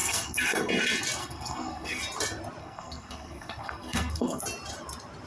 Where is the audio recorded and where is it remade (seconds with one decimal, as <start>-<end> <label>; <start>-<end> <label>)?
0.0-0.7 remade; 0.7-1.2 recorded; 1.2-2.0 remade; 2.0-2.6 recorded; 2.6-4.4 remade; 4.4-5.3 recorded